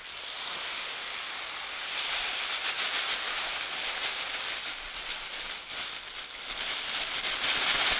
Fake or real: real